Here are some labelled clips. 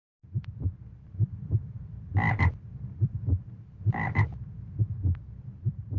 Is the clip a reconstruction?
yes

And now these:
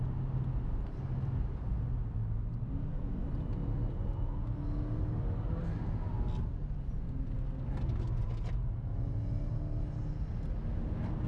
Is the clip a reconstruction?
no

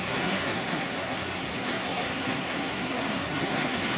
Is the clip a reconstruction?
yes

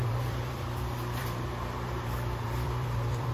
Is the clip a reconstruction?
yes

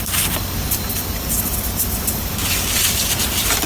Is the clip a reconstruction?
no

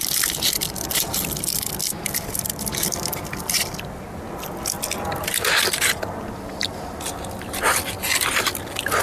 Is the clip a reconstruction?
no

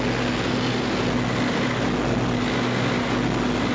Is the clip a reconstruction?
no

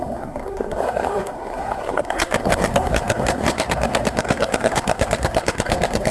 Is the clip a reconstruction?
yes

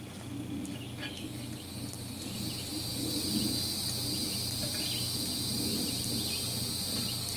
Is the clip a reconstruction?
no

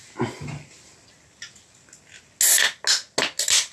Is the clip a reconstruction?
no